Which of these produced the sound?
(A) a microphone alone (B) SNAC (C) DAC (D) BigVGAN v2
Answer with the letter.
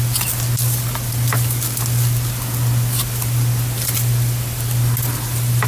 A